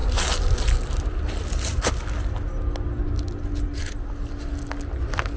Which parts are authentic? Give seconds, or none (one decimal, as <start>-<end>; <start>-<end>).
0.0-5.4